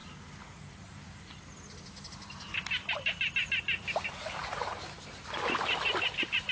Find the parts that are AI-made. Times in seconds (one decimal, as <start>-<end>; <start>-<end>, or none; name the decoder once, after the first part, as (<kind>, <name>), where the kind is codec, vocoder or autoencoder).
none